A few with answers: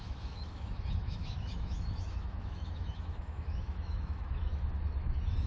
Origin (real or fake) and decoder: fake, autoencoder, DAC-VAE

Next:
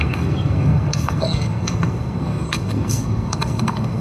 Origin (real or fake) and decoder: fake, codec, SNAC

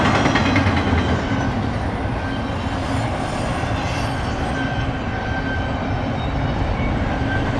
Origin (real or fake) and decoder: real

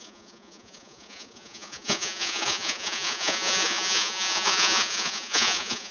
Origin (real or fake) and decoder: fake, vocoder, Vocos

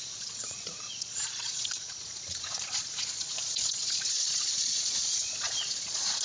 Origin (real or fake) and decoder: fake, vocoder, Vocos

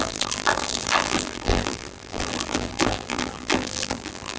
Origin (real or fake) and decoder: fake, vocoder, BigVGAN v2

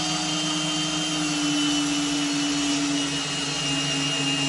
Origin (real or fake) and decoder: real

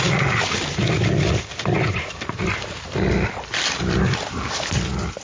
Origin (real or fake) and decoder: fake, vocoder, BigVGAN v2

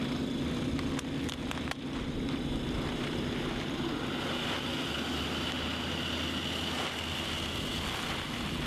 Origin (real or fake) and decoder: real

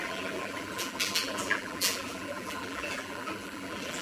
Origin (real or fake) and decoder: fake, vocoder, BigVGAN v2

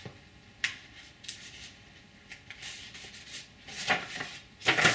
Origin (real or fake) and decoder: fake, vocoder, BigVGAN v2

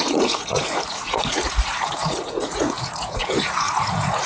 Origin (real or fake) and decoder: fake, vocoder, Vocos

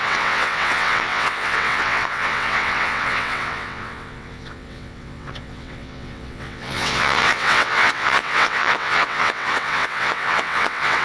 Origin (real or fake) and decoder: fake, vocoder, WaveNeXt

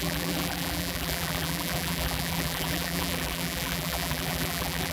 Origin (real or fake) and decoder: fake, vocoder, BigVGAN v2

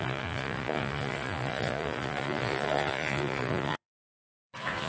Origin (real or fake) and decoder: fake, vocoder, Vocos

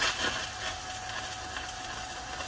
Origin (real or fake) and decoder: real